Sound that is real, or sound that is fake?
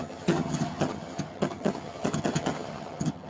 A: fake